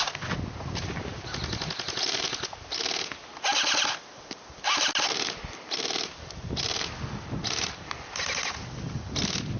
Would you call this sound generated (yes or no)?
no